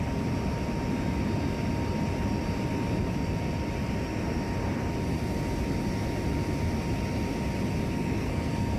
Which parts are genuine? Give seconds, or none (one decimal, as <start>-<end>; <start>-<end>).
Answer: 0.0-7.9